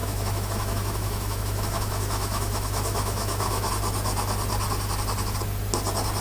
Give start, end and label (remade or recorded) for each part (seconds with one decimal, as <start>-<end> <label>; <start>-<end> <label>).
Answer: 0.0-3.7 remade; 3.7-6.2 recorded